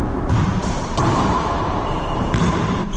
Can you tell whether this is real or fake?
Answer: fake